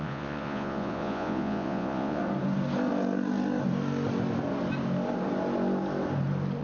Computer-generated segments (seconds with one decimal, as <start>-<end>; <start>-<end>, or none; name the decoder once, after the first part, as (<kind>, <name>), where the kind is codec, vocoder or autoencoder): 0.0-2.2 (vocoder, Vocos)